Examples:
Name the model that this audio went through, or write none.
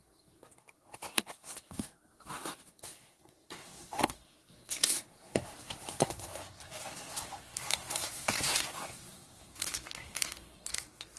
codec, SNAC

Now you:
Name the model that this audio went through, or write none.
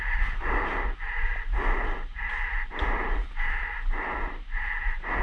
none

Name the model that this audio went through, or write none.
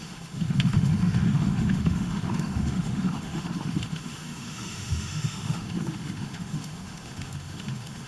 autoencoder, DAC-VAE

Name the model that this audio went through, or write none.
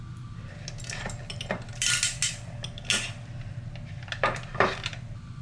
none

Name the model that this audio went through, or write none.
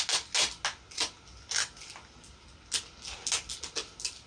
none